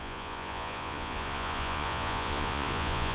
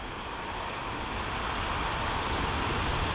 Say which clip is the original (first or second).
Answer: second